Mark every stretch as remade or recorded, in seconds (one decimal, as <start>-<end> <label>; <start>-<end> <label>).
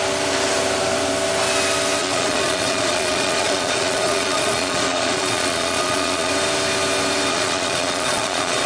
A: 0.0-2.0 recorded; 2.0-6.3 remade; 6.3-7.3 recorded; 7.3-8.7 remade